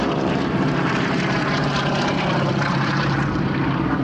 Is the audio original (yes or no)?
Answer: no